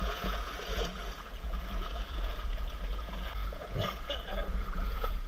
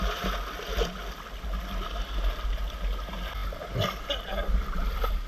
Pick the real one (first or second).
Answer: second